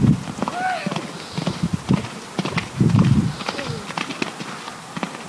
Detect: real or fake real